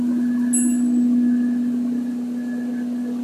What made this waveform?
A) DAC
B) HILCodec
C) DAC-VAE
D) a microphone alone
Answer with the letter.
D